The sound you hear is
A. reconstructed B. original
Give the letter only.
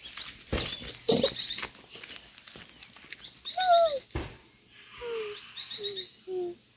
B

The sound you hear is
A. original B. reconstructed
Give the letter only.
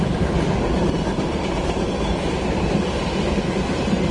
B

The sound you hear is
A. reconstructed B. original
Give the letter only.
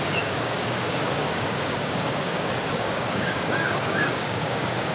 A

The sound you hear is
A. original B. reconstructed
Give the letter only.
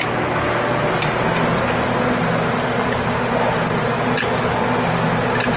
A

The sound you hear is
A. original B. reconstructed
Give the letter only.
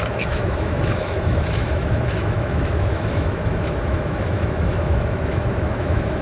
B